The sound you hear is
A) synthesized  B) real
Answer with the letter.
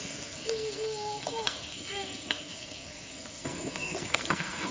A